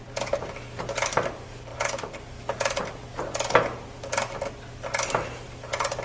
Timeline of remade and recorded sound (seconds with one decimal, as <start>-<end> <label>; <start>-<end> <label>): 0.0-6.0 recorded

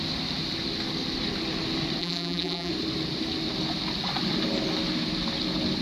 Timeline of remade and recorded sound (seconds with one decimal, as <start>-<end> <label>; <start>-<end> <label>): 0.0-2.0 recorded; 2.0-2.7 remade; 2.7-5.8 recorded

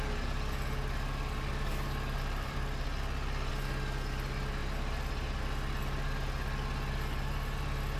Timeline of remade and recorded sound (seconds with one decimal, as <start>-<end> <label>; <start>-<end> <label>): 0.0-2.9 remade; 2.9-3.5 recorded; 3.5-4.6 remade; 4.6-5.4 recorded; 5.4-8.0 remade